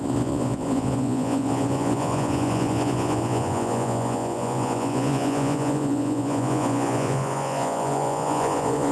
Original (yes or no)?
no